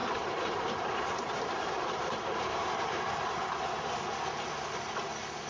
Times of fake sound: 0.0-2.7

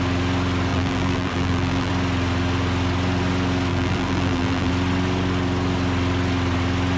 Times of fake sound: 0.7-1.9; 3.7-4.7

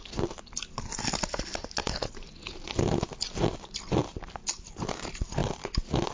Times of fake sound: none

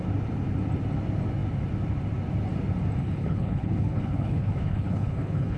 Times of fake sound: 3.0-5.6

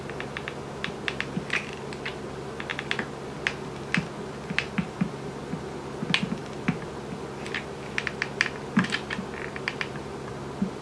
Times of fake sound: none